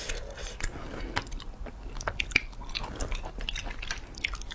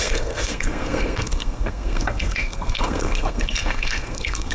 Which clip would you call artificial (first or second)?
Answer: second